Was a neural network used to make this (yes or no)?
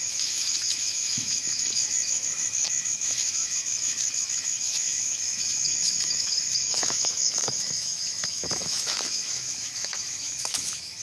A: yes